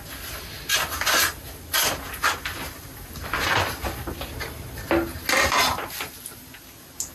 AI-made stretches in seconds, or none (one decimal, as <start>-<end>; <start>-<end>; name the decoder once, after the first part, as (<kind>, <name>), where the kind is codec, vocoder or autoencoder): none

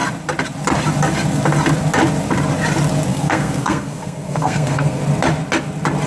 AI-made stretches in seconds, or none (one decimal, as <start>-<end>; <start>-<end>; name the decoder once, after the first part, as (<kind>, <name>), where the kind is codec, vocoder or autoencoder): 3.1-5.0 (codec, SNAC)